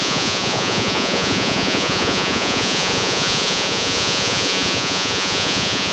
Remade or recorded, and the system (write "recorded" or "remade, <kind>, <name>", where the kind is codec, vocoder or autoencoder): remade, vocoder, Vocos